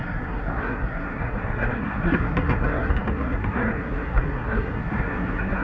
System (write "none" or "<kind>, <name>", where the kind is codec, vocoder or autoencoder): codec, SNAC